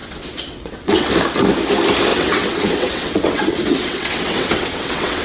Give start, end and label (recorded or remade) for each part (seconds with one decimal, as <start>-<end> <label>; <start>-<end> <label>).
0.0-1.1 remade; 1.1-2.1 recorded; 2.1-5.2 remade